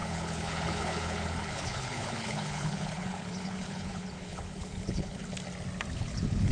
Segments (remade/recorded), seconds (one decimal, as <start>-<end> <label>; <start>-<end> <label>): 0.0-5.2 remade; 5.2-5.9 recorded; 5.9-6.5 remade